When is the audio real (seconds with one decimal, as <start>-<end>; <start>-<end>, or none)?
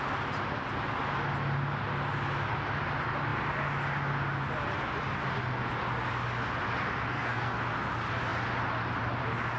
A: 0.0-7.1; 7.6-9.6